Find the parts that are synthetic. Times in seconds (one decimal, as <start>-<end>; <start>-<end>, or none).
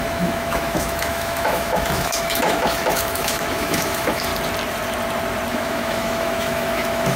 0.0-4.3; 5.5-7.2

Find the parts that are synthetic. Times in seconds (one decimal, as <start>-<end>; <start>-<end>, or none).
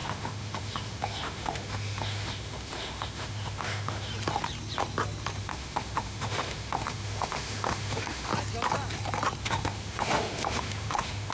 0.0-4.1; 5.4-8.3; 9.4-11.3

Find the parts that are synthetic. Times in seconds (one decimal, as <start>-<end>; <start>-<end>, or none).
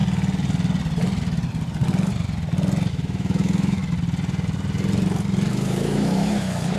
2.9-3.8; 5.5-6.8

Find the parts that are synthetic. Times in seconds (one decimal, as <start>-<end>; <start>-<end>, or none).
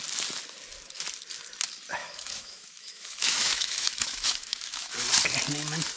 2.0-4.9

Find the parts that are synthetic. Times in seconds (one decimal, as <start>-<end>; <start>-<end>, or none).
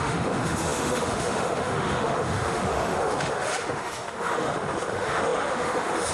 0.0-6.1